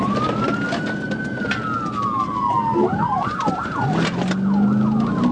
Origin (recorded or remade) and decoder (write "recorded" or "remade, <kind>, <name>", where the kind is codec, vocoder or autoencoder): recorded